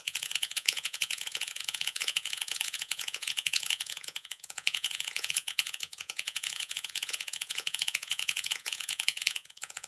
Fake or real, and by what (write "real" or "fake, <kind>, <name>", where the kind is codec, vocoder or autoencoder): fake, vocoder, Vocos